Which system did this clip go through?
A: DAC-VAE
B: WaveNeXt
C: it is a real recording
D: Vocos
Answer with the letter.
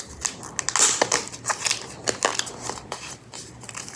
C